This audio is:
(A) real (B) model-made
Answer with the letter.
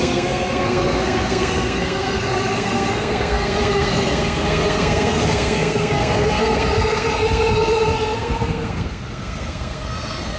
B